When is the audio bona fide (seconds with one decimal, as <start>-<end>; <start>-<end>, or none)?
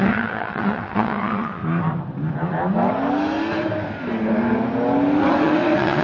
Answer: 1.6-5.2